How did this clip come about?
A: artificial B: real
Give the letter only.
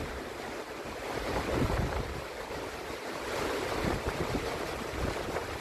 A